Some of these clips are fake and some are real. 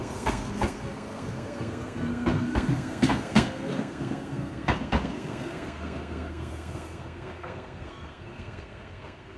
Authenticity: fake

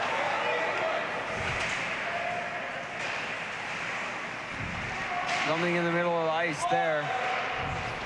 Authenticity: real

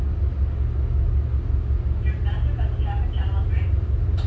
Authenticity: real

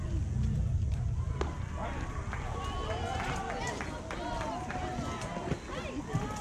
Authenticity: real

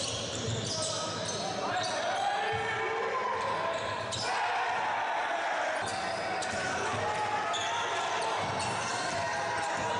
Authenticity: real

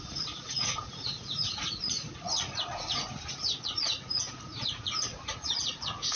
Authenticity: fake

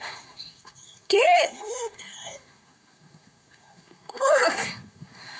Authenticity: fake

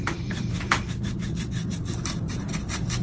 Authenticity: real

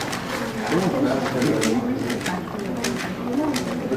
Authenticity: real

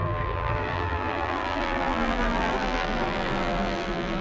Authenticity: fake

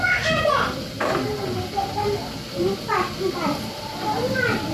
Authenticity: fake